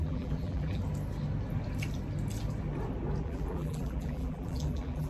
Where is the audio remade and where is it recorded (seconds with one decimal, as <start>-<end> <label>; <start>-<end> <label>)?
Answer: 0.0-0.8 remade; 0.8-3.2 recorded; 3.2-5.1 remade